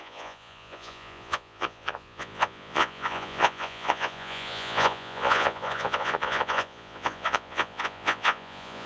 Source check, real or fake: fake